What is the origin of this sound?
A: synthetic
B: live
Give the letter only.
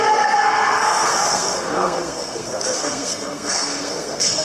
A